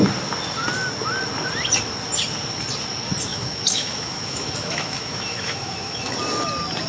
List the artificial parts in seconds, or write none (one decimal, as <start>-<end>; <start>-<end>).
3.3-6.1